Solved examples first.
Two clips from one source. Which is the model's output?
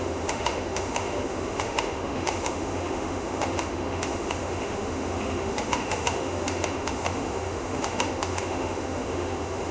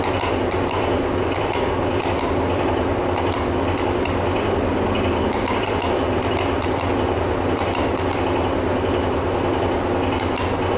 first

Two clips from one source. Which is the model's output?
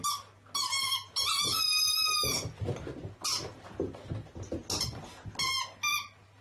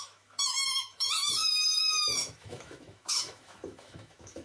second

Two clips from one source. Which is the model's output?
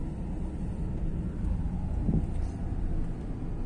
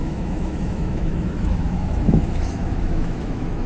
second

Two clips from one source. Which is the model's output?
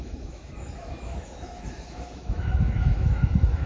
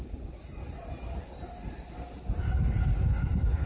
first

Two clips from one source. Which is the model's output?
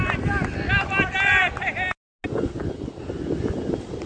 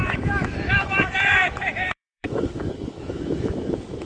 second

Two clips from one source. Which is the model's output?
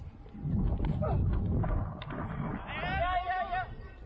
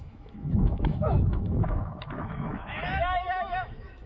second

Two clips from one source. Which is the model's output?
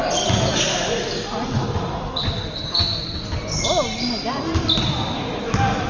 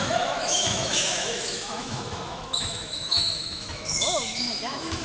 second